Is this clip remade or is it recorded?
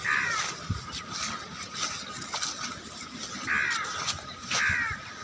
recorded